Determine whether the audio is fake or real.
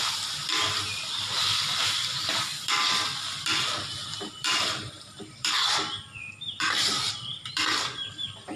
fake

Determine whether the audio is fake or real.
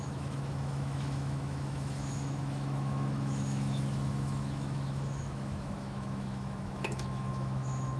fake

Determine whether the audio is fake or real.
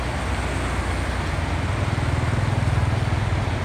real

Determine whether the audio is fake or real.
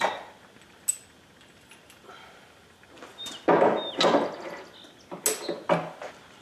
real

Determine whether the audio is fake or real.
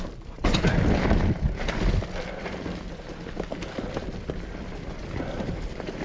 real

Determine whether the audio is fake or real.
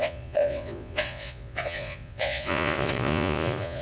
fake